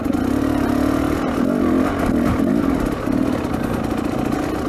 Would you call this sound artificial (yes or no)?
no